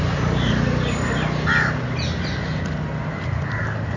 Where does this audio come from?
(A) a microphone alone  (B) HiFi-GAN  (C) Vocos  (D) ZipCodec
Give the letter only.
A